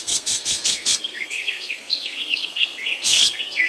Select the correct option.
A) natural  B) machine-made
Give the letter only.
B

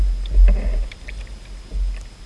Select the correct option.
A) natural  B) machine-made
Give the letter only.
A